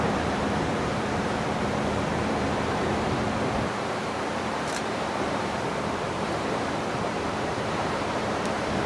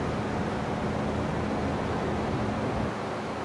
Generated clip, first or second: first